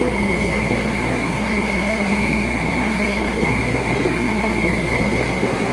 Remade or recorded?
remade